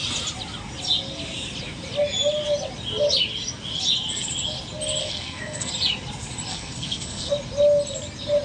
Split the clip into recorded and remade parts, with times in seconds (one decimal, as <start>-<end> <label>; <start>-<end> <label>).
0.0-5.0 recorded; 5.0-5.7 remade; 5.7-6.5 recorded; 6.5-7.3 remade; 7.3-8.4 recorded